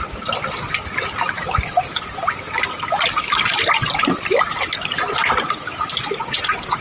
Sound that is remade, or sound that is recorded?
recorded